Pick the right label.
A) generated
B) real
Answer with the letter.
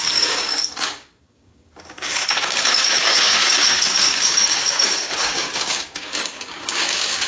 A